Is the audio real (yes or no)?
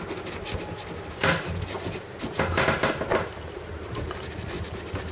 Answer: yes